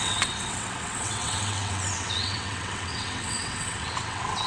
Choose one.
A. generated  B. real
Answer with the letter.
A